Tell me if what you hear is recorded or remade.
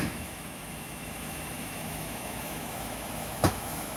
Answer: remade